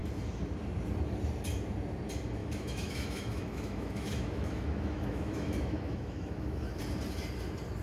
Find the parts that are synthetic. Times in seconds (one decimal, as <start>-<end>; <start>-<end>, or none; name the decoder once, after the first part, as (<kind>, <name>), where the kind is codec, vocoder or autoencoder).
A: 2.4-6.8 (autoencoder, DAC-VAE)